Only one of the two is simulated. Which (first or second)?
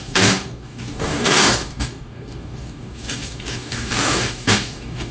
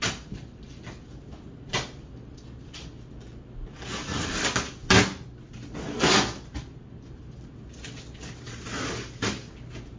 first